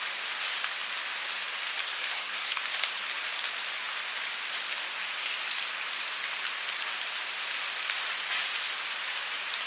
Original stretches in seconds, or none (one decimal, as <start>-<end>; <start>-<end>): 0.0-1.8; 2.6-9.7